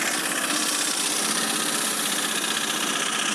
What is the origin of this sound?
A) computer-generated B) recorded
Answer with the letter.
B